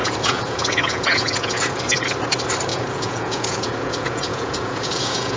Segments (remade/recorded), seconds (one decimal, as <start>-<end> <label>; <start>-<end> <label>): 0.0-1.8 remade; 1.8-2.7 recorded; 2.7-5.4 remade